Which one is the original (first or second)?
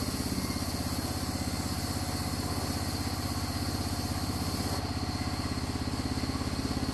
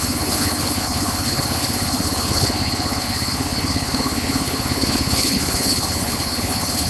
first